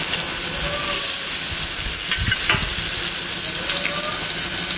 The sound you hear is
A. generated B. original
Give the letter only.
B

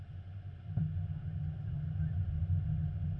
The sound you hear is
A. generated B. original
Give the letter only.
B